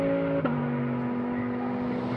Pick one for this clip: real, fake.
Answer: real